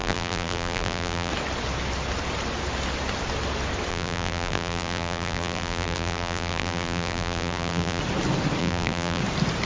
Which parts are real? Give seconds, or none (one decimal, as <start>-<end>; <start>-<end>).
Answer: 1.3-3.9; 8.0-8.6; 9.2-9.7